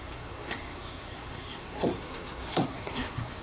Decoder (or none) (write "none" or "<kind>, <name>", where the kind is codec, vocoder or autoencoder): codec, SNAC